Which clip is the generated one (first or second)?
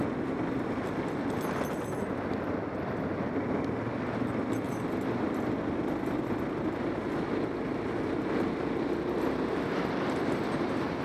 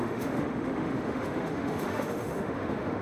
second